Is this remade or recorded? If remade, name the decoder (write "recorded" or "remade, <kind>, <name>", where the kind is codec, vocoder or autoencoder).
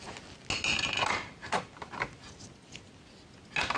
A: recorded